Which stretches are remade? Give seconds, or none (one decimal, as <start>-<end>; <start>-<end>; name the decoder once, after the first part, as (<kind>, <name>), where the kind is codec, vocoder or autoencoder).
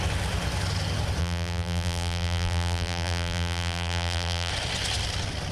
1.2-4.5 (vocoder, BigVGAN v2)